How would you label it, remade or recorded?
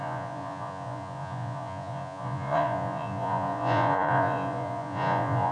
remade